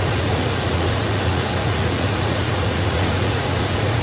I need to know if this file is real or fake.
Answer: fake